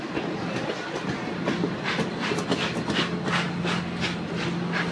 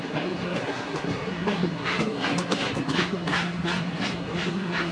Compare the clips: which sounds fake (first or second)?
second